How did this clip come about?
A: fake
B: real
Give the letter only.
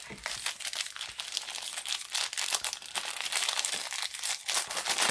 B